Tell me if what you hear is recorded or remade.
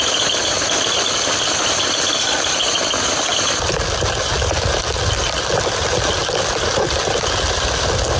recorded